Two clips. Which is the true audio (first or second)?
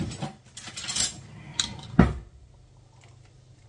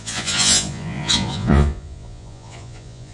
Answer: first